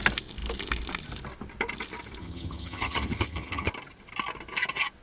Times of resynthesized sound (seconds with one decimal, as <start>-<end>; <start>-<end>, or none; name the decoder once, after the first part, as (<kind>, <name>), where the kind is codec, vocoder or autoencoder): 2.2-3.7 (vocoder, HiFi-GAN)